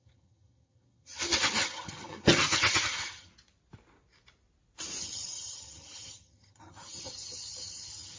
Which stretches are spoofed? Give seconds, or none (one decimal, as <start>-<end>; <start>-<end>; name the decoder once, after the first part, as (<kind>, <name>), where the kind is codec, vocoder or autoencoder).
0.0-3.3 (vocoder, HiFi-GAN); 5.0-8.2